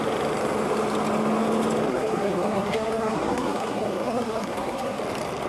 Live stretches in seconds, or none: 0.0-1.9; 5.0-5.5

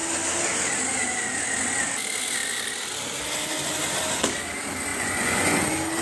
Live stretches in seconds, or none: 0.0-4.9; 5.6-6.0

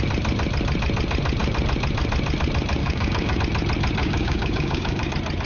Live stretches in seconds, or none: 0.0-2.8; 3.4-4.0; 5.1-5.5